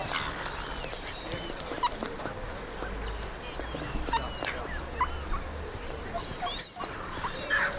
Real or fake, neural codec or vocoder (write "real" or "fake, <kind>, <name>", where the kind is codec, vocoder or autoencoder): real